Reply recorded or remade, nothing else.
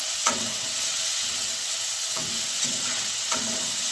remade